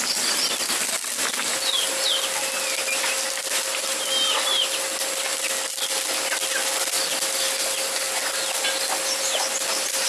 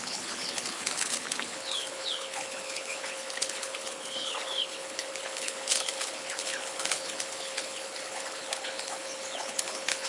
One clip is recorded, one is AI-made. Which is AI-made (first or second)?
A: second